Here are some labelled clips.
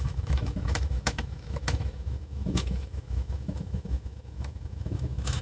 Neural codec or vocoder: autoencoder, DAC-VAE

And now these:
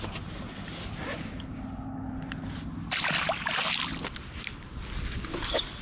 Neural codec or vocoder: none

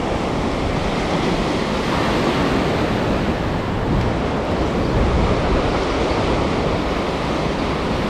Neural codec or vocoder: none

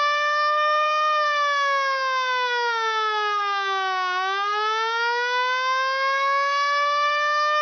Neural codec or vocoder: autoencoder, DAC-VAE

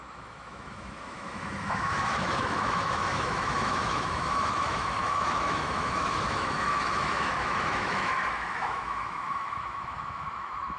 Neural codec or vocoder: autoencoder, DAC-VAE